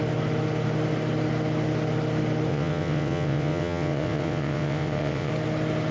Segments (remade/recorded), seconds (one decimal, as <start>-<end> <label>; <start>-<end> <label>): 0.0-2.5 recorded; 2.5-5.3 remade; 5.3-5.9 recorded